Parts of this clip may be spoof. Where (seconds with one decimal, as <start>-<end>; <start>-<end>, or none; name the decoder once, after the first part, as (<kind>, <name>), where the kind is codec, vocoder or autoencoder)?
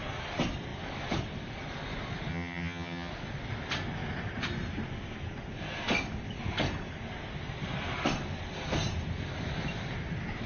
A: 2.3-3.1 (vocoder, HiFi-GAN)